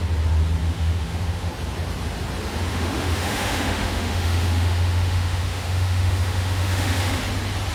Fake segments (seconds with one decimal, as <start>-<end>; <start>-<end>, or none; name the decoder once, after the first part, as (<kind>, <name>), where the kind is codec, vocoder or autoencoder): 0.6-1.5 (autoencoder, DAC-VAE); 2.7-7.2